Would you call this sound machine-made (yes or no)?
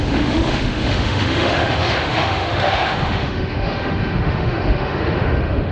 yes